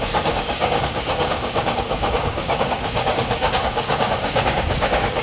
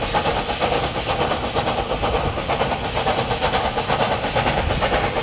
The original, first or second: second